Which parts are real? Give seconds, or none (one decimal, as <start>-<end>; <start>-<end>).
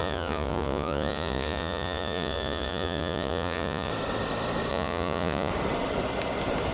3.9-4.7; 5.5-6.7